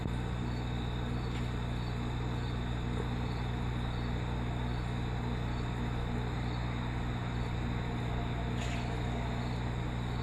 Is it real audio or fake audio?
real